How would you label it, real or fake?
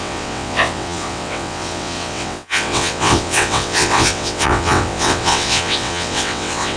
fake